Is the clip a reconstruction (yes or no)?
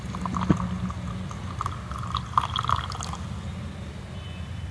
no